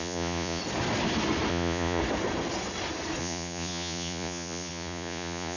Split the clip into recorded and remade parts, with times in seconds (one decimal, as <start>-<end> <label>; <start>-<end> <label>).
0.0-0.6 remade; 0.6-1.5 recorded; 1.5-2.0 remade; 2.0-3.2 recorded; 3.2-5.6 remade